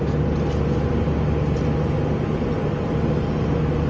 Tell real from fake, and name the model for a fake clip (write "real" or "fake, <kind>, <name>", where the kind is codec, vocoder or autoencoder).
real